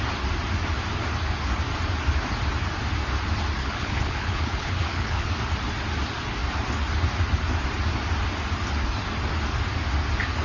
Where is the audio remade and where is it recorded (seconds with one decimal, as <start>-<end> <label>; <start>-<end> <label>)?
0.0-3.6 recorded; 3.6-5.3 remade; 5.3-10.4 recorded